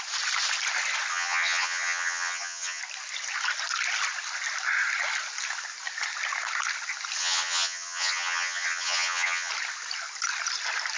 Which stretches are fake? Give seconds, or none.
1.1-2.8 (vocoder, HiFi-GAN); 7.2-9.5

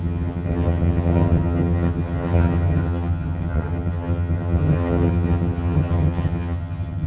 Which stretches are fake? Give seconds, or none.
0.0-7.1 (vocoder, HiFi-GAN)

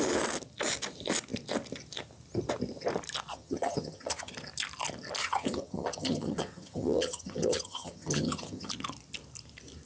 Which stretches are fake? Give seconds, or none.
3.3-4.3 (vocoder, HiFi-GAN); 5.2-8.7

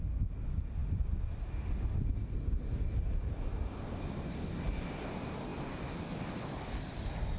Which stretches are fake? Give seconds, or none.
none

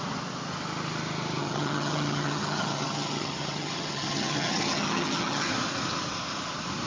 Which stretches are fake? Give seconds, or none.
1.4-5.5 (vocoder, HiFi-GAN)

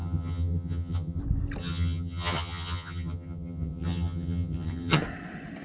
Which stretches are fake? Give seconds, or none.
0.0-1.2 (vocoder, HiFi-GAN); 1.6-5.0

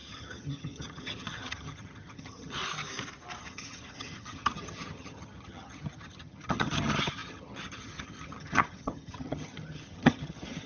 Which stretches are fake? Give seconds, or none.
0.0-2.6 (vocoder, HiFi-GAN); 3.4-10.7

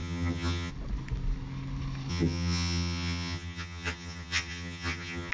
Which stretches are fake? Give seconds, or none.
0.0-0.7 (vocoder, HiFi-GAN); 2.1-5.3